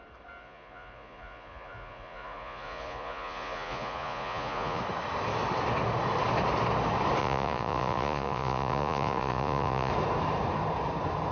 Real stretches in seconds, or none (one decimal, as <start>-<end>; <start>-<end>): 0.0-0.4; 4.8-7.2; 9.9-11.3